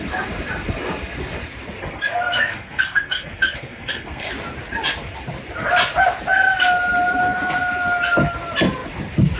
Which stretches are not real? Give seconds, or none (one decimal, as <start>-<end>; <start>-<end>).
1.8-4.3